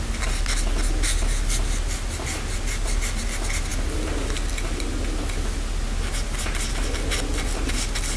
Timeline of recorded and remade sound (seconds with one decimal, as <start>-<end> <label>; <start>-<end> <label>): 0.0-8.2 recorded